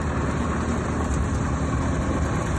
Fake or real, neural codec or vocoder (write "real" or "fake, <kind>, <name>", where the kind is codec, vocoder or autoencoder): real